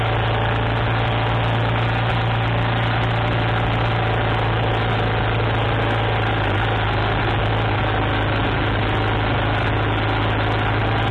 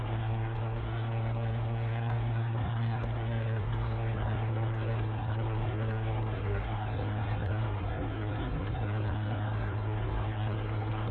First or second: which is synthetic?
second